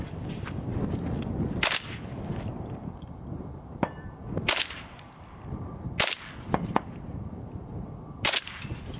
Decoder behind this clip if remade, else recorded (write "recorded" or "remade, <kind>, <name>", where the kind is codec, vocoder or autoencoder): remade, vocoder, BigVGAN v2